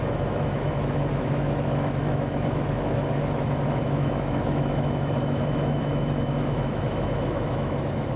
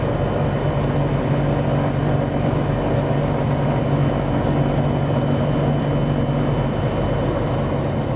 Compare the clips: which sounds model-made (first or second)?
first